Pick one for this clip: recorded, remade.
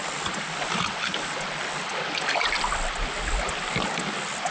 recorded